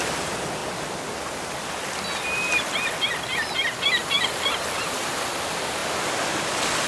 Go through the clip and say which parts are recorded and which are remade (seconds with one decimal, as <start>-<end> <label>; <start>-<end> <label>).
0.0-5.8 recorded; 5.8-6.5 remade; 6.5-6.9 recorded